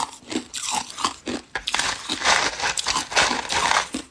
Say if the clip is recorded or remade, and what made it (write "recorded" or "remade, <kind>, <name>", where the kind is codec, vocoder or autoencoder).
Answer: recorded